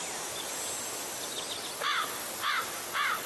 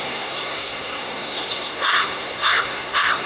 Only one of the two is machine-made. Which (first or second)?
second